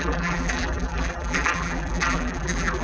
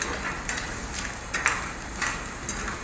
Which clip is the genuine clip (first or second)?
second